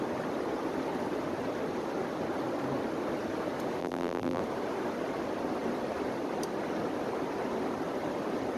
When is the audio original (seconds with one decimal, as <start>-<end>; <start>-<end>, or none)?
0.0-3.8; 4.4-8.6